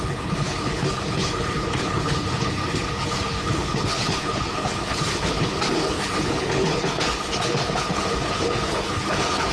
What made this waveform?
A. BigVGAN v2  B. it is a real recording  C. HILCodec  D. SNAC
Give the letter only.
C